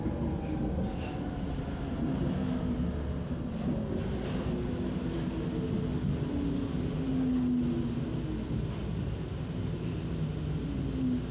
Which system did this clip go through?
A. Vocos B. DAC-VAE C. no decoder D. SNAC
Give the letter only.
C